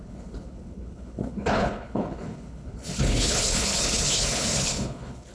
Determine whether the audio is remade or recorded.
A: remade